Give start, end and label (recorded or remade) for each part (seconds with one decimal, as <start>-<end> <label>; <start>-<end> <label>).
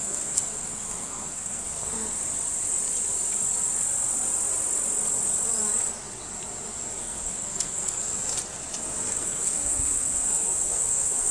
0.0-2.2 remade; 2.2-7.0 recorded; 7.0-8.1 remade; 8.1-9.1 recorded; 9.1-11.3 remade